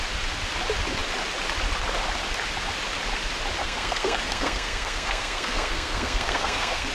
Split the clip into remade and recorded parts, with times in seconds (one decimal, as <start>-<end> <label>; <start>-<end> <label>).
0.0-3.6 recorded; 3.6-6.9 remade